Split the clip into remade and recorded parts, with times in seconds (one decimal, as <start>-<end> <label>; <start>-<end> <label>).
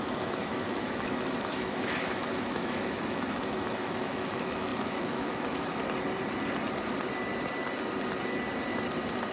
0.0-5.8 remade; 5.8-9.3 recorded